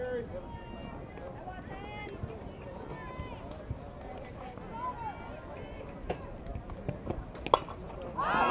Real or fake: real